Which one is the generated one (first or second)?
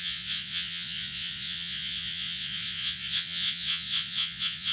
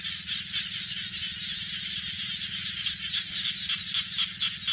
first